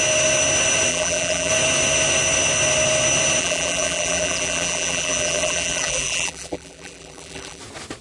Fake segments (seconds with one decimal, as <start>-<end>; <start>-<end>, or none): 0.9-1.5; 3.4-7.6

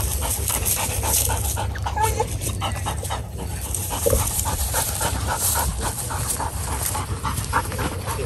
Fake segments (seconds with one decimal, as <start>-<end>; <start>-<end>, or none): 3.8-5.9